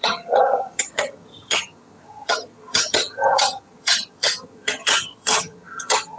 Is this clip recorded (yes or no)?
no